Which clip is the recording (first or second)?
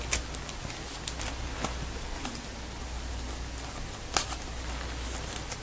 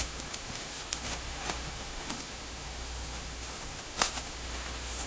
first